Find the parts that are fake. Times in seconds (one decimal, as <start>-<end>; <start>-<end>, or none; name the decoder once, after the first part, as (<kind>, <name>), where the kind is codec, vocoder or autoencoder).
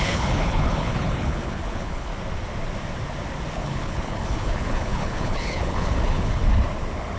0.0-2.1 (codec, HILCodec); 3.5-6.4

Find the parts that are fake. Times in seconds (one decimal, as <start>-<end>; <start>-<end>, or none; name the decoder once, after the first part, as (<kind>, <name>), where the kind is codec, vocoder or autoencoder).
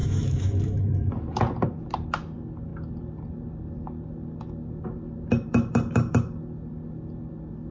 0.0-1.1 (autoencoder, DAC-VAE)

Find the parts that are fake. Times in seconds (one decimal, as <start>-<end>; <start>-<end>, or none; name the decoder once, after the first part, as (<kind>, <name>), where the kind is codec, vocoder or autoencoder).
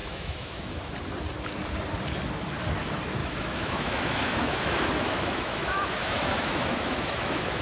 0.0-0.9 (autoencoder, DAC-VAE); 3.2-7.6